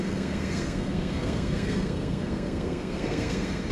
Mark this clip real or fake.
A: fake